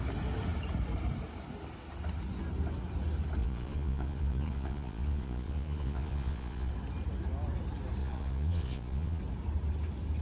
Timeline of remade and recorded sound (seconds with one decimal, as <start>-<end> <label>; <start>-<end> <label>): 0.0-3.4 recorded; 3.4-6.7 remade; 6.7-8.0 recorded; 8.0-9.2 remade; 9.2-10.2 recorded